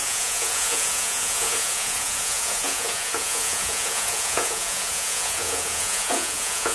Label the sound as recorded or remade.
remade